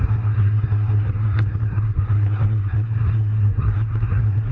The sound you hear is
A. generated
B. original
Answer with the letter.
A